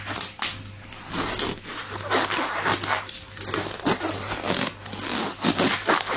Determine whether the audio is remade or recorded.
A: recorded